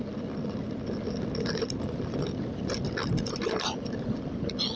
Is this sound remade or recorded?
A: recorded